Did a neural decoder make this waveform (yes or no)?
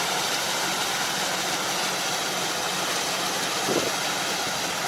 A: no